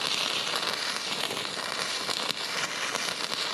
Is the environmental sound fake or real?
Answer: fake